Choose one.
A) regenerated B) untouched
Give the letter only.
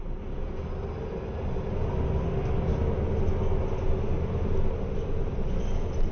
B